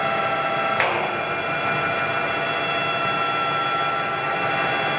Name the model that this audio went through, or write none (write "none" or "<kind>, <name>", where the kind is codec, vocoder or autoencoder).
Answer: none